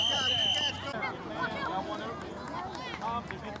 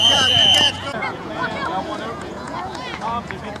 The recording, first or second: first